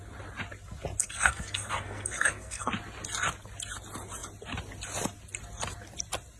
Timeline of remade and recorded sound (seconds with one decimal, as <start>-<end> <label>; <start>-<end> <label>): 0.0-1.0 recorded; 1.0-2.7 remade; 2.7-6.4 recorded